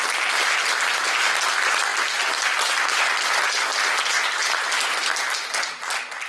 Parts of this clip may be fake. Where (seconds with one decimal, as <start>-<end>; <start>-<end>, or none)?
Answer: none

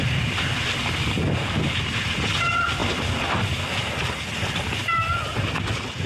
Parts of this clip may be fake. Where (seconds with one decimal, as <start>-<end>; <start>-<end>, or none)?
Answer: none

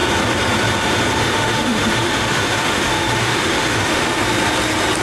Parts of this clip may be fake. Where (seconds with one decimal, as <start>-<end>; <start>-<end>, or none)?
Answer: 1.2-4.2